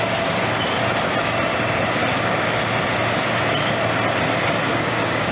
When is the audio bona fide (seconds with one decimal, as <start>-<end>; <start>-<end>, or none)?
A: 0.0-2.0; 2.6-4.7